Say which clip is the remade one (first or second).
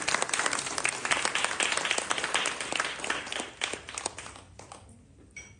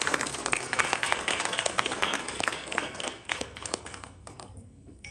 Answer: second